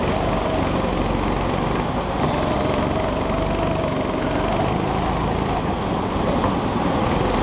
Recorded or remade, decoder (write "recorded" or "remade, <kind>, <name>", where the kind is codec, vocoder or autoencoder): recorded